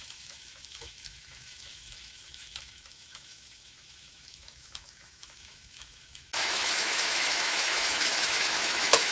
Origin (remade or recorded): remade